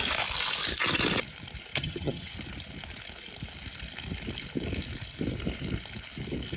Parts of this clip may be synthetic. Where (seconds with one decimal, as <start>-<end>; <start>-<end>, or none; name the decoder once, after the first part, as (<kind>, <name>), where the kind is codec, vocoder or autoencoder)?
1.7-2.3 (vocoder, HiFi-GAN)